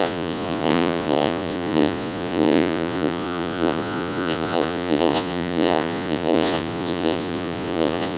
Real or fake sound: fake